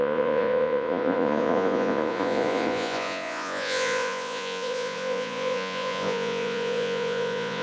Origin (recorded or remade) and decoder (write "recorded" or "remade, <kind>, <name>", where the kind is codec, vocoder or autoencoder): remade, vocoder, Vocos